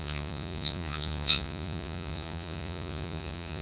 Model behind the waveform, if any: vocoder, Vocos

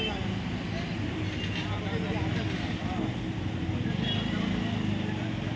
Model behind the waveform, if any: none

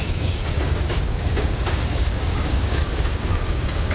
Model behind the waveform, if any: codec, DAC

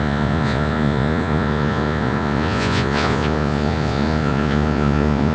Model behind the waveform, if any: vocoder, Vocos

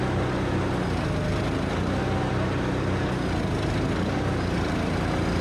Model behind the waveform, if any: none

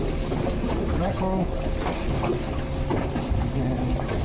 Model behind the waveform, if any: none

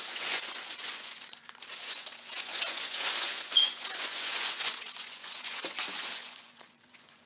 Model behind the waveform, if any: vocoder, Vocos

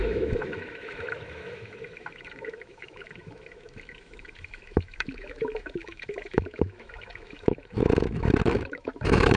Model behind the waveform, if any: autoencoder, DAC-VAE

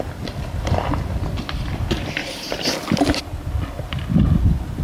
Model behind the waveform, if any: none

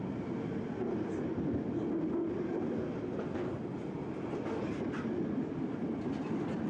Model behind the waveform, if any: none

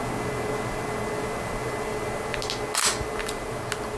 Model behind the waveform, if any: none